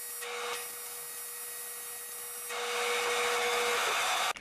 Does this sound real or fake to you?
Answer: real